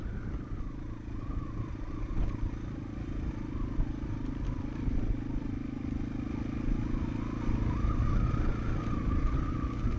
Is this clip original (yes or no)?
yes